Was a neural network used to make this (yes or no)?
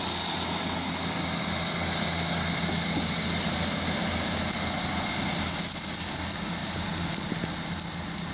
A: no